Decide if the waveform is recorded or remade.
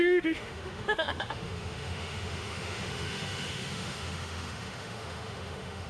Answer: remade